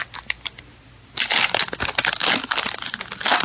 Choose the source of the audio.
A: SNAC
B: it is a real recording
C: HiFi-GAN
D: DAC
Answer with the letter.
B